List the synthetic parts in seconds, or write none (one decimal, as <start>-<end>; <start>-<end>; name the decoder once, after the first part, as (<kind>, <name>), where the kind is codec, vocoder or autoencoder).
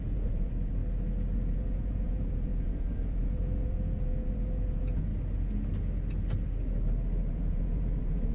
0.0-0.8 (vocoder, Vocos); 1.5-5.1; 7.3-8.3